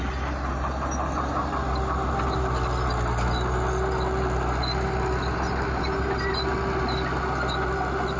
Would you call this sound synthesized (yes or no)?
no